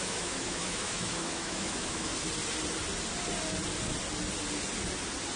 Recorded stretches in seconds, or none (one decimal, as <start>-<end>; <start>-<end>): 2.1-5.4